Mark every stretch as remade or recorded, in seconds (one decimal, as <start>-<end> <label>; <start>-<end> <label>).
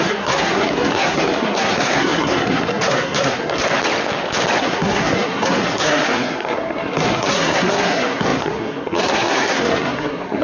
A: 0.0-3.6 remade; 3.6-4.6 recorded; 4.6-10.4 remade